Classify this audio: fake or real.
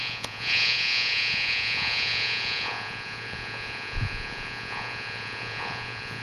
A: fake